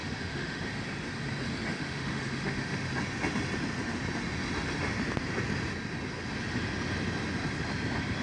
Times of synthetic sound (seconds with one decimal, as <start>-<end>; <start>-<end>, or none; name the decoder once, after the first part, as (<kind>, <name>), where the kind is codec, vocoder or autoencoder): 0.0-0.8 (autoencoder, DAC-VAE); 1.7-2.9